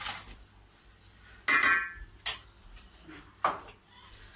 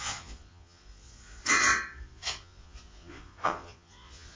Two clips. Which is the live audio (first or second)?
first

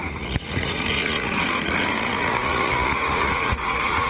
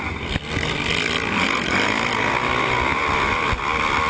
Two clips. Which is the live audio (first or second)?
second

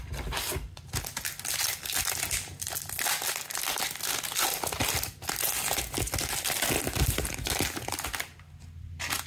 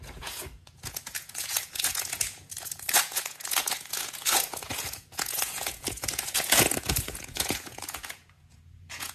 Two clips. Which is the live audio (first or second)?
first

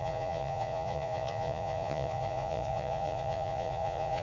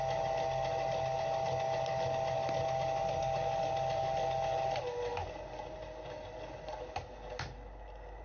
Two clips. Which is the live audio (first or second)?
second